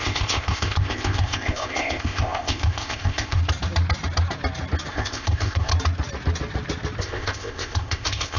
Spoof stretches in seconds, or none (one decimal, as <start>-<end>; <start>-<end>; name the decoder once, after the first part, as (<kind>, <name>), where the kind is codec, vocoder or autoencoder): 0.0-3.4 (codec, ZipCodec); 4.9-5.7; 7.0-8.4